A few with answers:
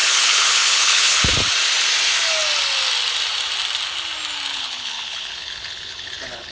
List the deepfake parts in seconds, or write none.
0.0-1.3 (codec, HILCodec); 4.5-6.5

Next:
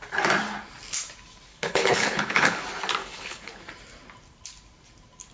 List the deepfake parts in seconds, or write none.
1.5-2.6 (codec, HILCodec); 3.0-3.6